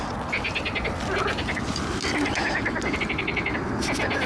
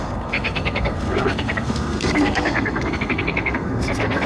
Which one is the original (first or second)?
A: first